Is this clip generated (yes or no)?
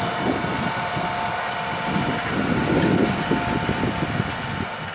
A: no